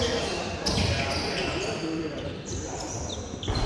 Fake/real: fake